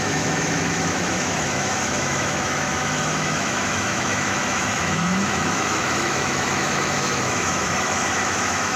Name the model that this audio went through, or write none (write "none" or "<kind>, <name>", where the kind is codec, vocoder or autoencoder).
autoencoder, DAC-VAE